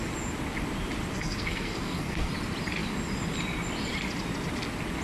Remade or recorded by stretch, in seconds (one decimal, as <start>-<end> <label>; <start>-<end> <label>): 0.0-1.1 recorded; 1.1-2.3 remade; 2.3-5.0 recorded